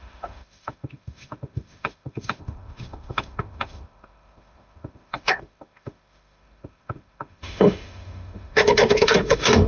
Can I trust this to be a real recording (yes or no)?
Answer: no